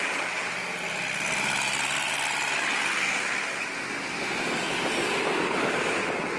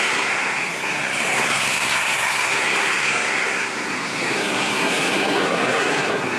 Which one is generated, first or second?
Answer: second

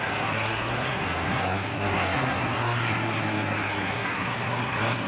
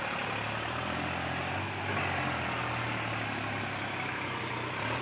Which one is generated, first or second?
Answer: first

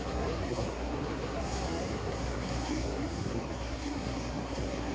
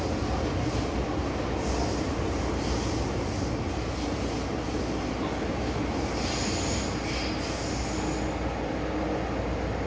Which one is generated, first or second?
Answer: first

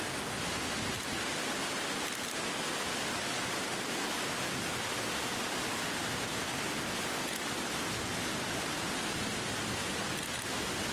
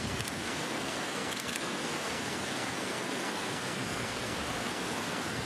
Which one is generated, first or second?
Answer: second